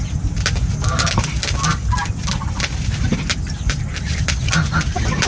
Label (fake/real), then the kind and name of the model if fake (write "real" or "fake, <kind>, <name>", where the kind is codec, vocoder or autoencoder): real